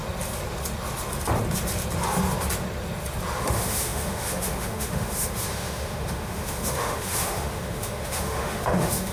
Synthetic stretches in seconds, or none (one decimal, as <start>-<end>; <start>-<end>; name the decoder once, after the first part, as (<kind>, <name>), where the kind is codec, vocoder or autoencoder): 3.4-9.1 (autoencoder, DAC-VAE)

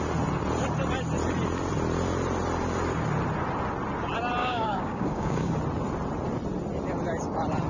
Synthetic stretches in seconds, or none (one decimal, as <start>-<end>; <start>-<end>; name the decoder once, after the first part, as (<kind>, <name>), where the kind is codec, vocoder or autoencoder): 4.4-5.5 (codec, DAC)